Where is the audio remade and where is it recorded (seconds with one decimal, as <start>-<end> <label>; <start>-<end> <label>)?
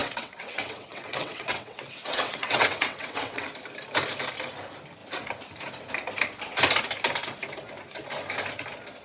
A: 0.0-3.5 remade; 3.5-9.0 recorded